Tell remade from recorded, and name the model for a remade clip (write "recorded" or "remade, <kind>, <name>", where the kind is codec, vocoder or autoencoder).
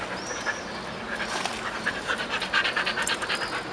recorded